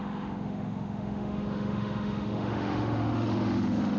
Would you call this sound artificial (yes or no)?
yes